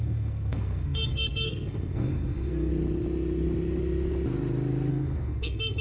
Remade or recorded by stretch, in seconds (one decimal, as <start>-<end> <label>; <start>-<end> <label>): 0.0-2.7 remade; 2.7-4.9 recorded; 4.9-5.8 remade